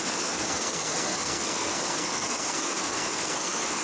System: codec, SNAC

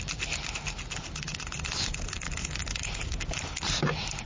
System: none